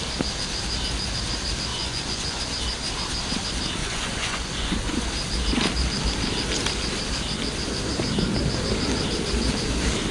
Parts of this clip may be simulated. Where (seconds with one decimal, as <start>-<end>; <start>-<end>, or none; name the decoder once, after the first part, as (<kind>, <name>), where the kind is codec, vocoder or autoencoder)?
1.7-2.4 (vocoder, Vocos); 3.8-5.1